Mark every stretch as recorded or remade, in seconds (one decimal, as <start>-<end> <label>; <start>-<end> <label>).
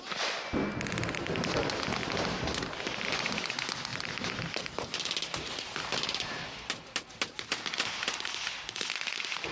0.0-2.0 recorded; 2.0-3.1 remade; 3.1-3.9 recorded; 3.9-7.0 remade; 7.0-9.5 recorded